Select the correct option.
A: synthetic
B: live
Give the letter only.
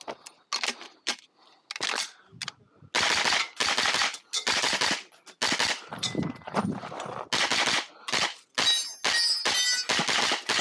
B